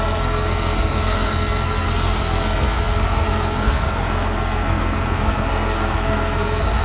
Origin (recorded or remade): remade